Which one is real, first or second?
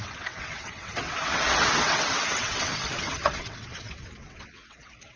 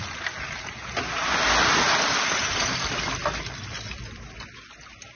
second